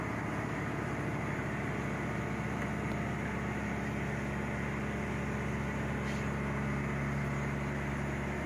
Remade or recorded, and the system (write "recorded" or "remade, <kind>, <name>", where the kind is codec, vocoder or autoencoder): recorded